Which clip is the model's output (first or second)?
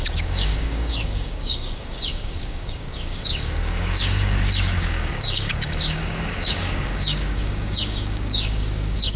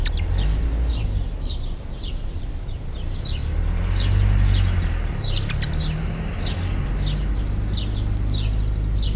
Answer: first